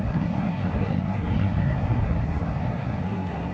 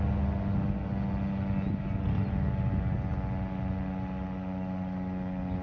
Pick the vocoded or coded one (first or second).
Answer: first